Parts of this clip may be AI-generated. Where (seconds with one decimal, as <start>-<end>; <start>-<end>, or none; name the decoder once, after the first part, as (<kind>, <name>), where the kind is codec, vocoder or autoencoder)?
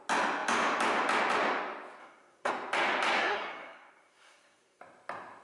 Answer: 2.0-2.5 (codec, SNAC); 3.2-4.8